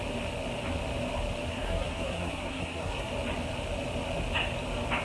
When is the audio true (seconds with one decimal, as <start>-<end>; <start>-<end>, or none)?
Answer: 0.0-1.5; 3.1-5.0